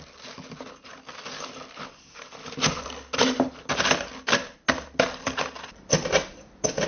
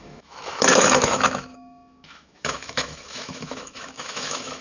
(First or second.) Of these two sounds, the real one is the first